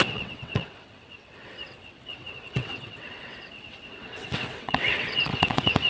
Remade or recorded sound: remade